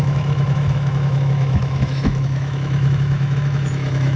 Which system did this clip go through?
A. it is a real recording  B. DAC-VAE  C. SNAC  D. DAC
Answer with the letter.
B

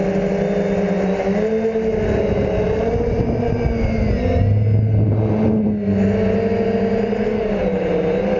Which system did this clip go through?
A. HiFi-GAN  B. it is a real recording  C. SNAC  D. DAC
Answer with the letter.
B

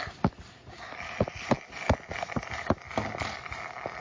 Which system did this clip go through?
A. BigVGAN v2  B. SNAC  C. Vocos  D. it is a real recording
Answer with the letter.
D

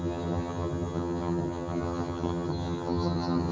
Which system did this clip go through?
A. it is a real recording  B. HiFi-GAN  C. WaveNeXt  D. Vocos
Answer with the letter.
B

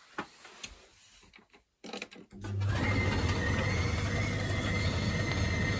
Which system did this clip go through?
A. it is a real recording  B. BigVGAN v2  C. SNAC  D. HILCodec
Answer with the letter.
A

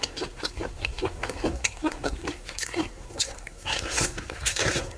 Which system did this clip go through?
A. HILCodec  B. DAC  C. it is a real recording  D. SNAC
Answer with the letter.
D